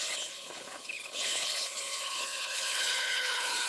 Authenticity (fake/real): fake